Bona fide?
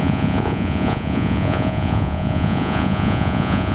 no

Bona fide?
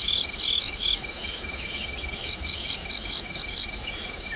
no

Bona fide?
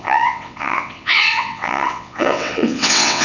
no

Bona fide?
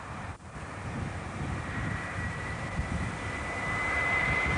no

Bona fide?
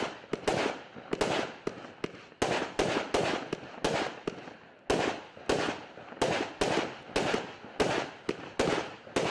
yes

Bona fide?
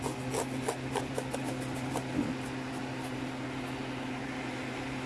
yes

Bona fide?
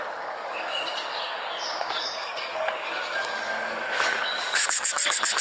no